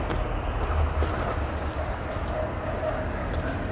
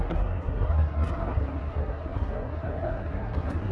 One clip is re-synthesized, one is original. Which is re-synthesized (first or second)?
second